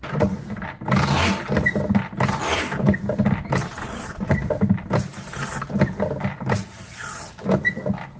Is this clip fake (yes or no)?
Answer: no